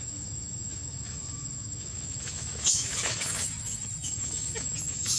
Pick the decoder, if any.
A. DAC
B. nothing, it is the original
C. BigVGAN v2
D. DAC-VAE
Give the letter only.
D